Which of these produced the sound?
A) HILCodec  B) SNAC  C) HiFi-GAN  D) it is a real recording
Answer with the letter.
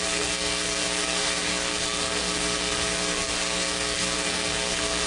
B